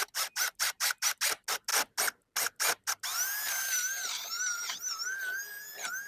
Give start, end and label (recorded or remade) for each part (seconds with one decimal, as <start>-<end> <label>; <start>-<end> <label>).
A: 0.0-6.1 recorded